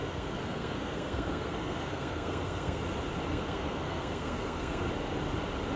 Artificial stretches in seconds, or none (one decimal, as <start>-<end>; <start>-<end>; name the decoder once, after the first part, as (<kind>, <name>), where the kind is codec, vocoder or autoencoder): 0.0-2.8 (codec, SNAC); 3.3-4.9